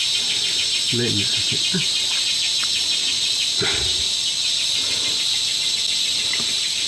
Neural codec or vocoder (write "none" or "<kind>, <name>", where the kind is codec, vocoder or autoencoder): none